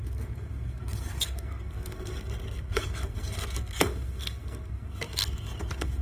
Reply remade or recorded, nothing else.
remade